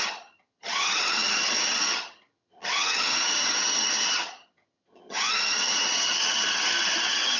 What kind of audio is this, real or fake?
fake